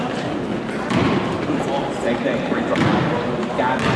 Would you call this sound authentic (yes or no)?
yes